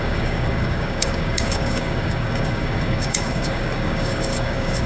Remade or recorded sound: remade